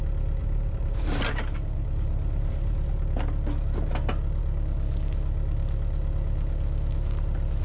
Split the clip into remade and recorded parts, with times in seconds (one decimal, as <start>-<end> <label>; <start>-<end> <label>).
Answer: 0.0-0.4 recorded; 0.4-2.9 remade; 2.9-7.6 recorded